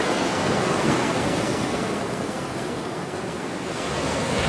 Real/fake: fake